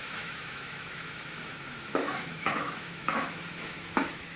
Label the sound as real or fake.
fake